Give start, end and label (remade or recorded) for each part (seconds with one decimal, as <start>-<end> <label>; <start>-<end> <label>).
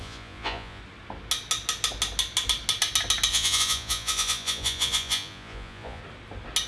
0.0-0.8 remade; 0.8-3.3 recorded; 3.3-6.0 remade; 6.0-6.7 recorded